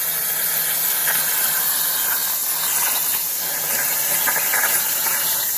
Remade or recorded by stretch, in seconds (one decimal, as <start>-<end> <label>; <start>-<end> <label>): 0.0-5.6 recorded